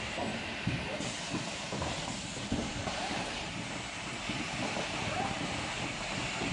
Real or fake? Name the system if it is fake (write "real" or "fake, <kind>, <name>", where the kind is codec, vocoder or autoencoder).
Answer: fake, vocoder, BigVGAN v2